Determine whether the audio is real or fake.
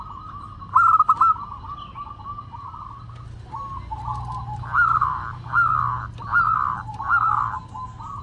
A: real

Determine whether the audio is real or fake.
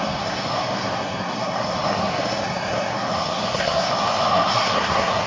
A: fake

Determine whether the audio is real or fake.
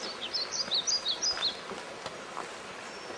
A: real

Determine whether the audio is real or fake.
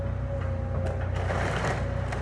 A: real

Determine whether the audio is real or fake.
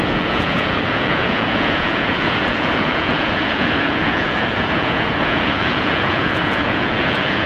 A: fake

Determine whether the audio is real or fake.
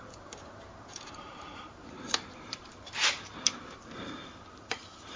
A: fake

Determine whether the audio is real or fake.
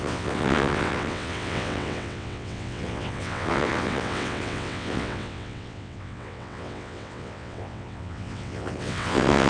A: fake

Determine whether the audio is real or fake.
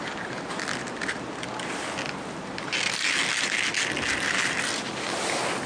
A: real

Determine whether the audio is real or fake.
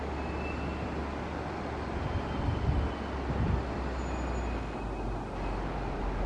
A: real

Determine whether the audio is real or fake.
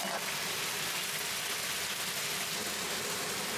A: real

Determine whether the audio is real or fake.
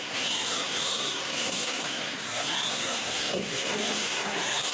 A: fake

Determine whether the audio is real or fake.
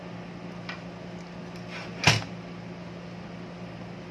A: real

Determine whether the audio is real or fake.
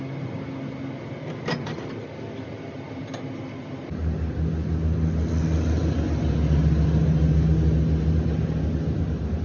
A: real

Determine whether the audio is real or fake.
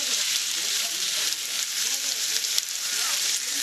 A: fake